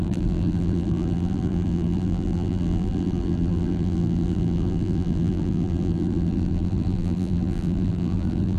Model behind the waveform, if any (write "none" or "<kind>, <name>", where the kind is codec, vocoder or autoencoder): vocoder, BigVGAN v2